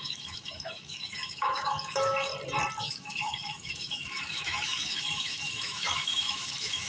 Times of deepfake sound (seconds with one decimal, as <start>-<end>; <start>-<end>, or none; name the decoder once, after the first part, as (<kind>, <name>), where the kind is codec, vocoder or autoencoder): 0.0-2.3 (autoencoder, DAC-VAE); 2.8-6.9